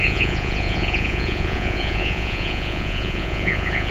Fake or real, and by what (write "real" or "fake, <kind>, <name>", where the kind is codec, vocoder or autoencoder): fake, vocoder, Vocos